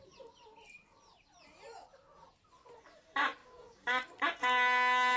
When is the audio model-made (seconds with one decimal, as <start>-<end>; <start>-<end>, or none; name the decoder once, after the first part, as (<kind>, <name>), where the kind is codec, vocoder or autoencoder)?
3.4-4.2 (codec, DAC)